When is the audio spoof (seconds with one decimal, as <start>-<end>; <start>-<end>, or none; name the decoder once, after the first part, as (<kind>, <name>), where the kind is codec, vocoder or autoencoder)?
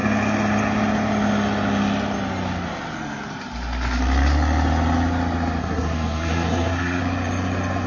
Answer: 5.6-7.0 (codec, SNAC)